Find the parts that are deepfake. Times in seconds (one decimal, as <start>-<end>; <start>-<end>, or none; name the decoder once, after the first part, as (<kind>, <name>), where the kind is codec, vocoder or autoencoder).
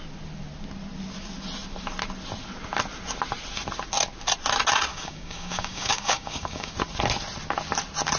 4.9-6.7 (codec, DAC)